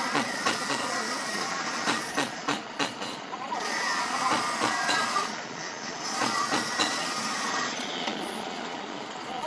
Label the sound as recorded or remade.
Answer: remade